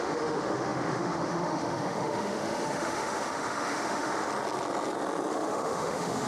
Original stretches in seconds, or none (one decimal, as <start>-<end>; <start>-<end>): 4.3-5.3